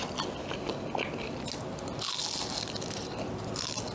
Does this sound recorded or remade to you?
recorded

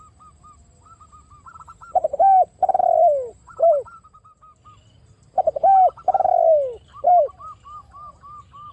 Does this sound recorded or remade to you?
recorded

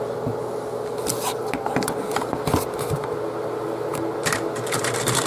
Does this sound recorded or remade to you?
recorded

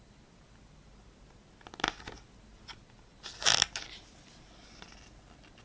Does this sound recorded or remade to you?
recorded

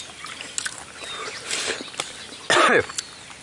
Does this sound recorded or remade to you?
recorded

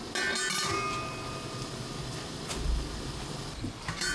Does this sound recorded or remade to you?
recorded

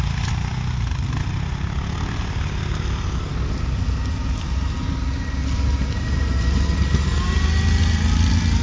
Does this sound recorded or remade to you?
recorded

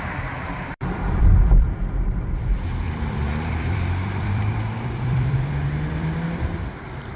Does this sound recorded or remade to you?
remade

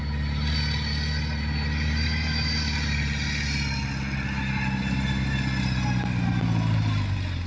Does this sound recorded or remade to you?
recorded